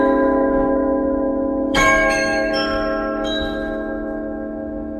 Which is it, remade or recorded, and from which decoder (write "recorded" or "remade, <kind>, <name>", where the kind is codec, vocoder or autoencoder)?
remade, autoencoder, DAC-VAE